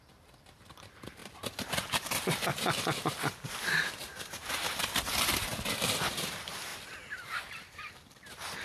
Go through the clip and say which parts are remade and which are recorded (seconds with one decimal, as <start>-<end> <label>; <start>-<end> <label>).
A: 0.0-2.5 remade; 2.5-3.5 recorded; 3.5-5.5 remade; 5.5-6.1 recorded; 6.1-6.7 remade; 6.7-7.4 recorded; 7.4-8.6 remade

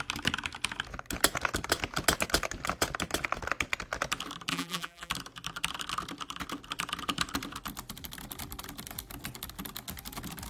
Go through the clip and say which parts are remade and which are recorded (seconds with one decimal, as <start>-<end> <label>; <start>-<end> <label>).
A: 0.0-4.5 recorded; 4.5-5.1 remade; 5.1-10.5 recorded